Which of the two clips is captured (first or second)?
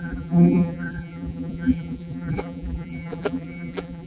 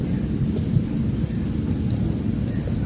second